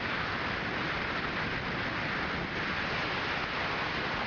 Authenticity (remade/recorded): recorded